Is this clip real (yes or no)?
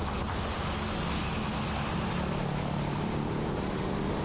yes